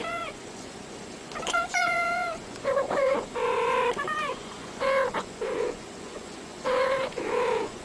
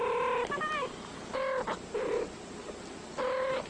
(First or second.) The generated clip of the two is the first